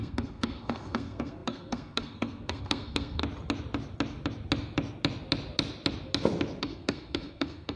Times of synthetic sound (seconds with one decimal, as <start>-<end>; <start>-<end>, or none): 0.0-3.2; 6.6-7.8